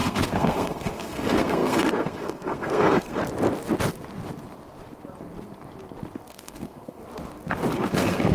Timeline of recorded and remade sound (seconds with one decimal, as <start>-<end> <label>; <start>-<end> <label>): 0.0-3.2 remade; 3.2-6.3 recorded; 6.3-7.0 remade; 7.0-7.7 recorded; 7.7-8.3 remade